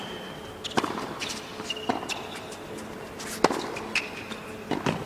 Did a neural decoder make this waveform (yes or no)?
no